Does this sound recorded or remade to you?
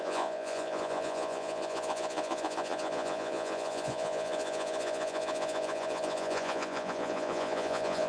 remade